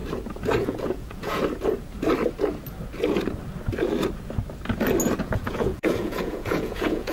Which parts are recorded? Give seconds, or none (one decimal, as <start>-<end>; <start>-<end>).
0.0-0.6; 1.4-5.2